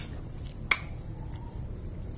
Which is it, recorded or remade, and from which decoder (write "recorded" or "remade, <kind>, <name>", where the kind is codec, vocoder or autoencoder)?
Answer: recorded